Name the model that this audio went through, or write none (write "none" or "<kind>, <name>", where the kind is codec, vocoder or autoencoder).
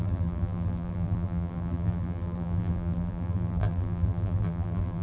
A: vocoder, BigVGAN v2